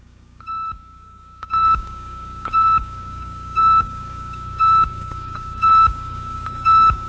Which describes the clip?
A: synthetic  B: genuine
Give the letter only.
A